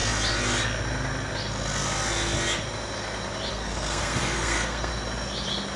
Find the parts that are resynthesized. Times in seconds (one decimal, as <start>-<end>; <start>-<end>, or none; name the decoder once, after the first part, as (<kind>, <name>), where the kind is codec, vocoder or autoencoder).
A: 3.5-4.9 (codec, SNAC)